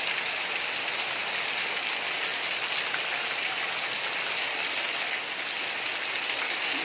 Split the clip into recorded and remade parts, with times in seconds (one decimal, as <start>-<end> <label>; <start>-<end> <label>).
0.0-6.8 recorded